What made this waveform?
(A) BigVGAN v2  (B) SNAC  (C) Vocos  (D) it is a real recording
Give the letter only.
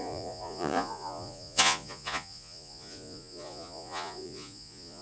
C